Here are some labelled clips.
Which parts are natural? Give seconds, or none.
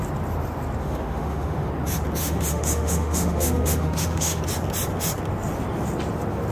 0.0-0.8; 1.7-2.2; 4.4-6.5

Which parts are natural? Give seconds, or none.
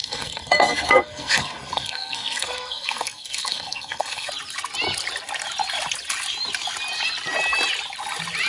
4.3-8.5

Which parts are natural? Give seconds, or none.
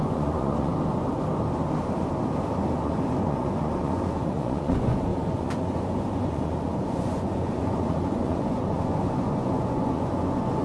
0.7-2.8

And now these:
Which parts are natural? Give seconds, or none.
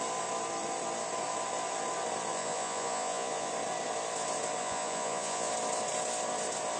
0.0-2.3; 3.5-4.6; 5.5-6.8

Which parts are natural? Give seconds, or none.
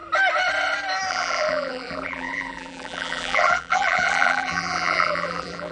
0.0-1.1